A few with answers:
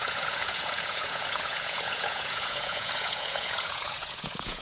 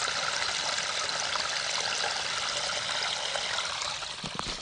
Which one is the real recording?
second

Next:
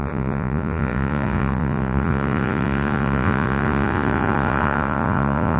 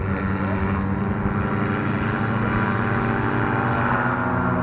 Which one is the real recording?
second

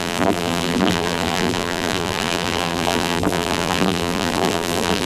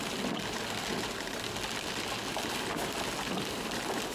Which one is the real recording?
second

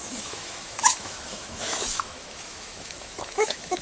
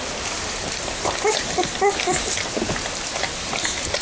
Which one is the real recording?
second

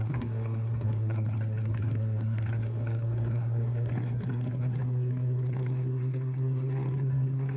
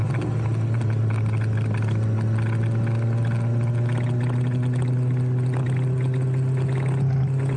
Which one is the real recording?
second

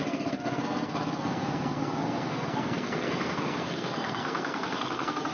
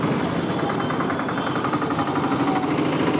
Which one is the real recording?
second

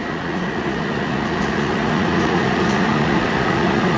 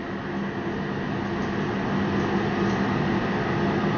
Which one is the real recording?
second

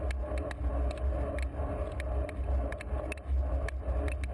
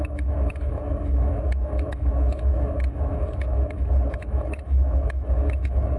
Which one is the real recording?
first